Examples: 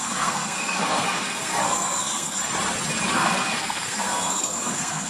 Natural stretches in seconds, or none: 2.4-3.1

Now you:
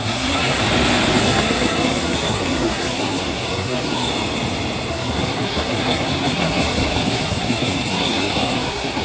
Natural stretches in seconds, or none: 0.6-1.2; 4.1-4.9

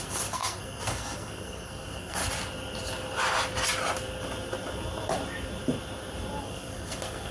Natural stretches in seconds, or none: 2.2-6.4

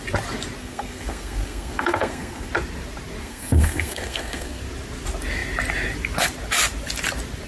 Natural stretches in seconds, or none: 0.0-0.6; 2.5-3.2; 4.6-7.5

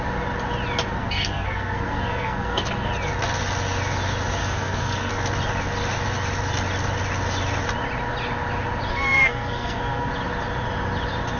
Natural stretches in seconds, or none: 0.0-1.0; 2.9-4.4; 5.1-8.9; 10.1-11.4

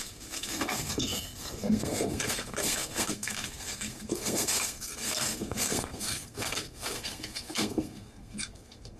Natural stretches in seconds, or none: none

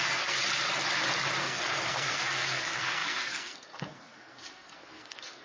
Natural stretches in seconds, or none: 0.4-1.4

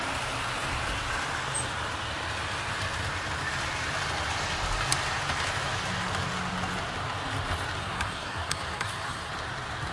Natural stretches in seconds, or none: 0.0-7.8; 9.3-9.9